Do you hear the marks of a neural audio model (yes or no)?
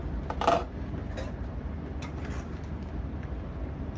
no